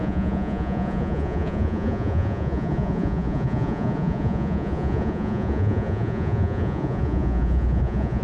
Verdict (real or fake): fake